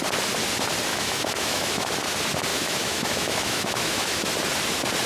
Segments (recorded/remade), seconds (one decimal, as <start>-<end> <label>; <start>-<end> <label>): 0.0-0.9 recorded; 0.9-1.9 remade; 1.9-2.5 recorded; 2.5-4.3 remade; 4.3-5.1 recorded